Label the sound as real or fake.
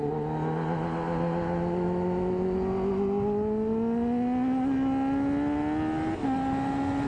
real